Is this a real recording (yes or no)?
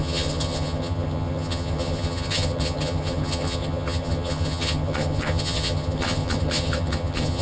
no